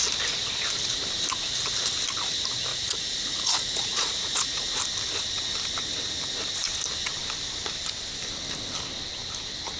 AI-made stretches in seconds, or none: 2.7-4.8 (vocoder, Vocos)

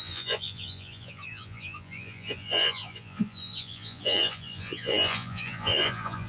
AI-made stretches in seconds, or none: 0.0-6.3 (vocoder, Vocos)

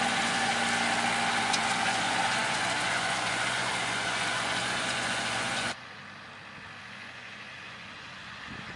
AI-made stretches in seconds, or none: 0.0-0.5 (vocoder, Vocos); 1.4-6.0; 6.8-8.8